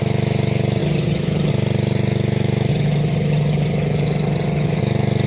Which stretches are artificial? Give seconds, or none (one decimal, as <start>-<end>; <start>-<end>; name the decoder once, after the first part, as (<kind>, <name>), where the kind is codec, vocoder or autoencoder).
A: 0.8-1.5 (vocoder, HiFi-GAN); 2.7-4.8